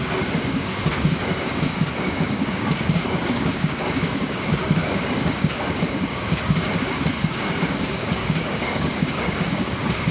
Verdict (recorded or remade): remade